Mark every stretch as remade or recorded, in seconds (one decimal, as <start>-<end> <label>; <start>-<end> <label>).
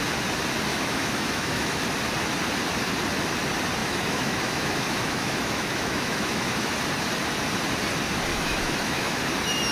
0.0-0.7 recorded; 0.7-1.8 remade; 1.8-3.8 recorded; 3.8-6.7 remade; 6.7-8.3 recorded; 8.3-9.2 remade; 9.2-9.7 recorded